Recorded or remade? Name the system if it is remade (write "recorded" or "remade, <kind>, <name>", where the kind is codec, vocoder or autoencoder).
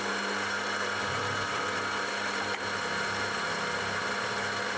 recorded